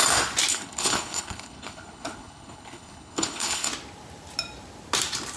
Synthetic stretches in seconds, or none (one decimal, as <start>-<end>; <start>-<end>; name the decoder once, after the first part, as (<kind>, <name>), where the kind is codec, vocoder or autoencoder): 0.5-3.7 (codec, HILCodec)